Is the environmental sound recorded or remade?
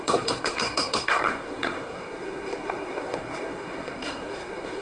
remade